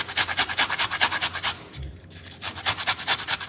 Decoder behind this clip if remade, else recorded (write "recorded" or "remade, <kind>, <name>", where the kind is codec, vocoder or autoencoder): recorded